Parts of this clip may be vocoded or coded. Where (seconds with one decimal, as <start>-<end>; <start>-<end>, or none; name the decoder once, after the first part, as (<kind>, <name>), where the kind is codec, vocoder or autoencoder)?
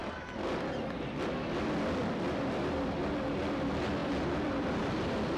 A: 0.0-0.8 (vocoder, BigVGAN v2); 2.0-3.0; 4.0-5.4